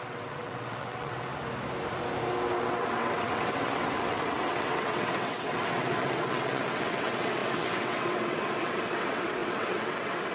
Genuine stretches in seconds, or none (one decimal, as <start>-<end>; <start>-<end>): 1.3-2.6